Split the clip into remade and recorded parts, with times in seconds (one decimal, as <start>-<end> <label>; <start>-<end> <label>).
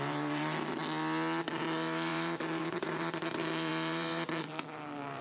0.0-0.8 remade; 0.8-1.4 recorded; 1.4-5.2 remade